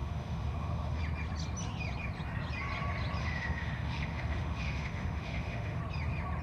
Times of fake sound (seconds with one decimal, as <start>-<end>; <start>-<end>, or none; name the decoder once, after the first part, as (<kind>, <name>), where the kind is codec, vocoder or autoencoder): 0.0-1.0 (autoencoder, DAC-VAE); 3.2-5.8